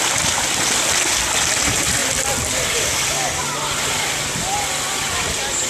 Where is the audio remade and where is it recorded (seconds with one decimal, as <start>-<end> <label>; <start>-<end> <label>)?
0.0-5.7 recorded